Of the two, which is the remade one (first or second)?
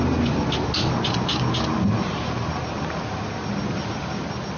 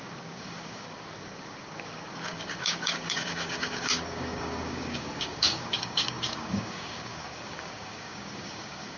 second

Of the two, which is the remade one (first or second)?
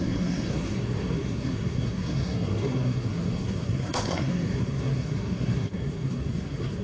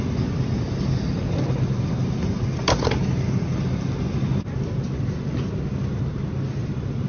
first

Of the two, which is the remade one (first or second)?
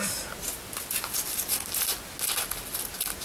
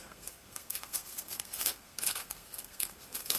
second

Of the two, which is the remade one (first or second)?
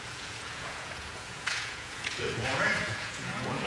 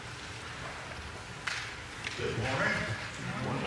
first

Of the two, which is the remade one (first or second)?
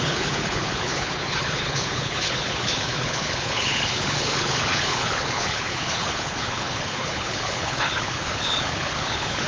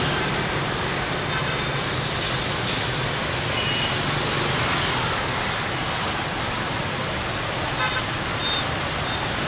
first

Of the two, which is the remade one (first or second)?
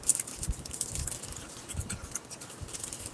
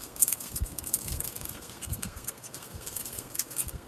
second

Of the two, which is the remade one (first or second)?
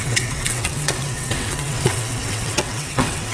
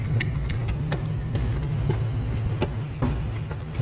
first